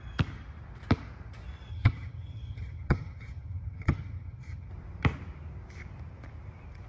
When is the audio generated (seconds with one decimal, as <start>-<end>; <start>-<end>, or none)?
1.7-4.7